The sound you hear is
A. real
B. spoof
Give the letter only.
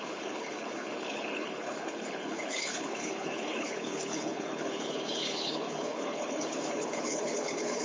B